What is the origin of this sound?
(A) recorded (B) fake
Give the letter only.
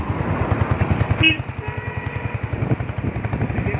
A